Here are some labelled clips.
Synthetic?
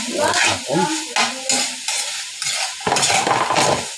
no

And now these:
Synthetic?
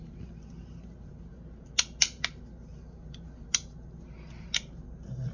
no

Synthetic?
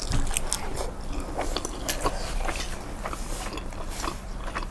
no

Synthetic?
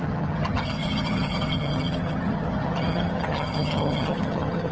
yes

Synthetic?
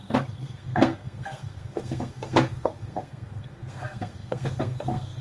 yes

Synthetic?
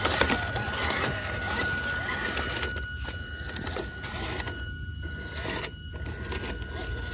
no